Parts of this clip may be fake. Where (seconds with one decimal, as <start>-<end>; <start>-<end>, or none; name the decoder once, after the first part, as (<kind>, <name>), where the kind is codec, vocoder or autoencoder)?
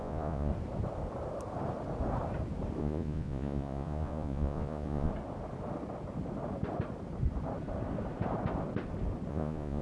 0.0-0.5 (vocoder, Vocos); 2.8-5.1; 9.3-9.8